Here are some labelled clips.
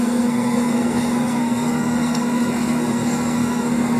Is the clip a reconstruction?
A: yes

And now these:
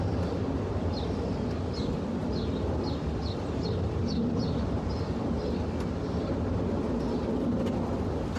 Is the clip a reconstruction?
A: no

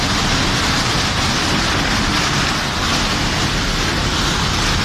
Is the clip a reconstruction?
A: no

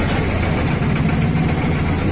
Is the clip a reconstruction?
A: no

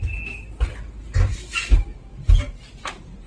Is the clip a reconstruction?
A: no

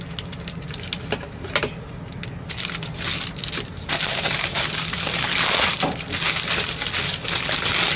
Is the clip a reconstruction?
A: no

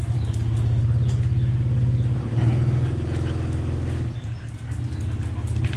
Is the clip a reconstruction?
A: no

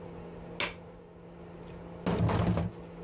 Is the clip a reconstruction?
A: no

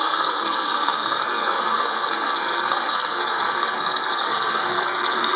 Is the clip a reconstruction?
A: yes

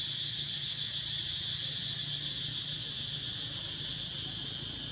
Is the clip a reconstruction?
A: no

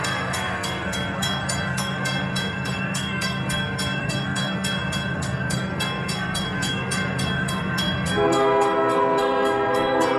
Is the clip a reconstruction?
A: yes